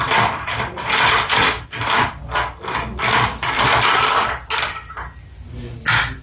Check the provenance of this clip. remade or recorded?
recorded